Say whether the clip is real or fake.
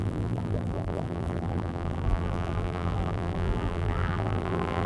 fake